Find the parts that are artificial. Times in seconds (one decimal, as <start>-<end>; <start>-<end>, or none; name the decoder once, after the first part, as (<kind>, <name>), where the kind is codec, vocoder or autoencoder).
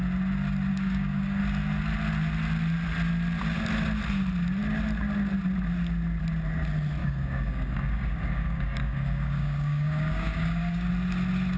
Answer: 0.7-1.4 (codec, DAC); 7.0-10.9